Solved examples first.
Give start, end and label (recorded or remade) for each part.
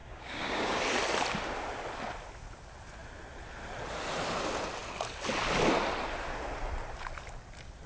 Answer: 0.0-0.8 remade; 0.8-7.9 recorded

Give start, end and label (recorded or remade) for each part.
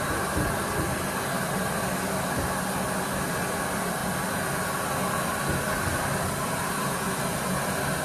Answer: 0.0-8.0 recorded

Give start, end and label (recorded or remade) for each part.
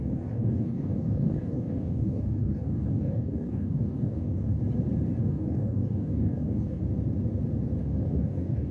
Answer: 0.0-4.6 remade; 4.6-5.2 recorded; 5.2-6.8 remade; 6.8-7.8 recorded; 7.8-8.7 remade